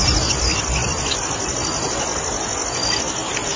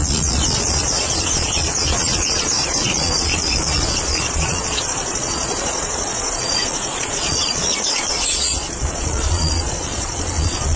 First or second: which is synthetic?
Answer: second